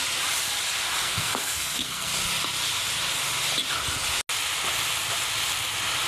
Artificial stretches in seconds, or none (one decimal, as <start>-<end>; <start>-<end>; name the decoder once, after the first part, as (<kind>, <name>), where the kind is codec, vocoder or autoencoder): 1.0-2.1 (codec, SNAC)